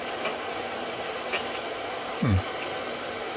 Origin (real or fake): real